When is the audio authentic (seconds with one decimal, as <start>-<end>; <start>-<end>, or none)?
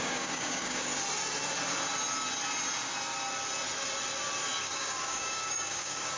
0.9-4.6